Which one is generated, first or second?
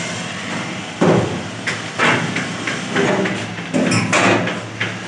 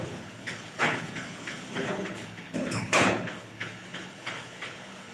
second